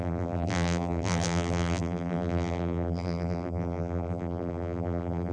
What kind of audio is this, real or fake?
fake